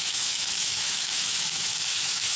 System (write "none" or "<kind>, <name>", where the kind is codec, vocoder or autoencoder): autoencoder, DAC-VAE